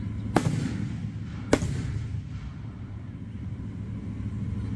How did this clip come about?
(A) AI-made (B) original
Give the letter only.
B